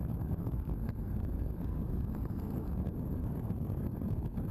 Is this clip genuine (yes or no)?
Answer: no